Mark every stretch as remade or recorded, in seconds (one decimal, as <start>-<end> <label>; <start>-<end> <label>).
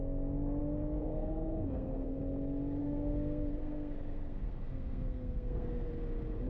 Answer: 0.0-1.0 recorded; 1.0-2.2 remade; 2.2-2.8 recorded; 2.8-5.9 remade; 5.9-6.5 recorded